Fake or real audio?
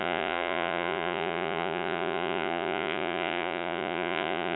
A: fake